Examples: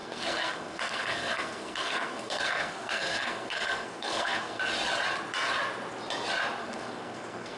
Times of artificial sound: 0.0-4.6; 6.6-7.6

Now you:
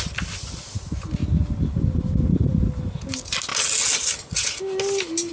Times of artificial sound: none

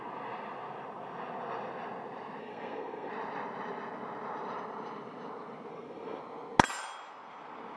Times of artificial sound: 2.4-3.1; 5.7-6.2

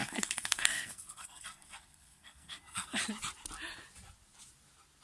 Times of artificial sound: 0.0-3.0

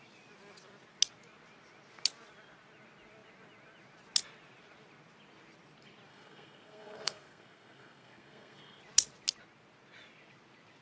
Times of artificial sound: 6.1-8.8

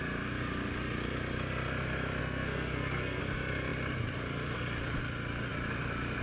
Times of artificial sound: 2.2-3.2

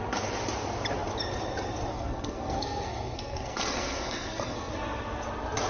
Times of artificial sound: 1.9-4.7